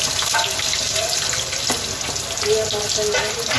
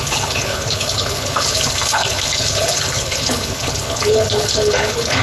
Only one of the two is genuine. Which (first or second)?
first